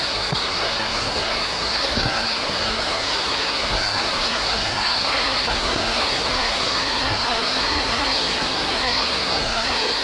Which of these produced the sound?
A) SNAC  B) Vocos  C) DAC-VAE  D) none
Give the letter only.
A